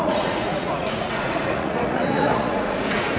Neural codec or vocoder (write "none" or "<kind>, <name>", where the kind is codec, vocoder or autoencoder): vocoder, Vocos